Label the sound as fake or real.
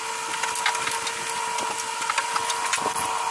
real